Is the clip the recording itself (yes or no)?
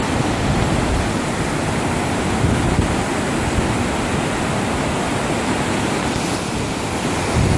yes